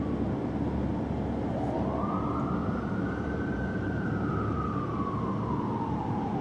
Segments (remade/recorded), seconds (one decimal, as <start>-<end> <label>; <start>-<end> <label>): 0.0-2.6 recorded; 2.6-4.3 remade; 4.3-6.4 recorded